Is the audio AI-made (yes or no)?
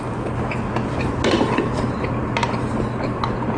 no